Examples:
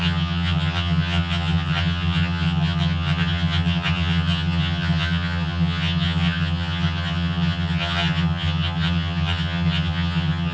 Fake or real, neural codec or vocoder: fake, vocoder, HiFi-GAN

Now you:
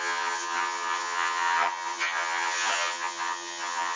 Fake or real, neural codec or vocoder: fake, vocoder, HiFi-GAN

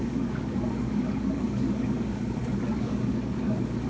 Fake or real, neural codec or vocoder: fake, codec, DAC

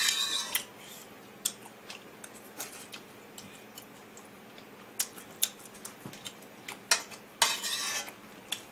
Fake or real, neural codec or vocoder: real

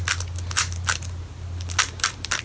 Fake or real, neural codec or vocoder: real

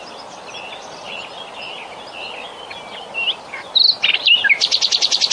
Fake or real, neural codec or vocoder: real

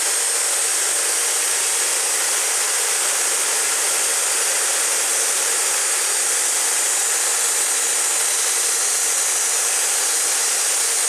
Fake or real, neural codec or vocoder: real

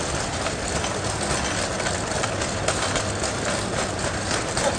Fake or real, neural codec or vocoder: real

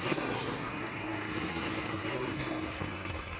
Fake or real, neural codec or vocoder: fake, codec, SNAC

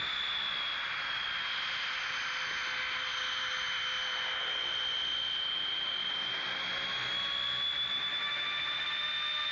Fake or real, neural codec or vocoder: real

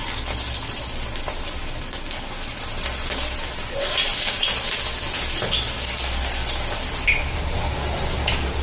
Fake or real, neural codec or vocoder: real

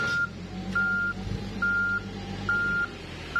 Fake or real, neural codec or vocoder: real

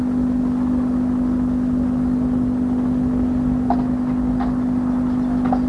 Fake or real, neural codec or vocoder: real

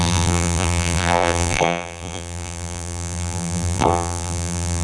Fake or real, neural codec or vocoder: fake, vocoder, BigVGAN v2